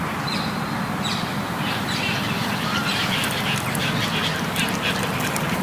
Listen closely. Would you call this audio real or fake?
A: fake